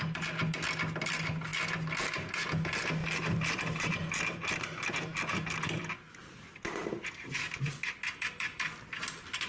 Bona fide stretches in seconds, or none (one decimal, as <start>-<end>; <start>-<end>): 0.0-9.5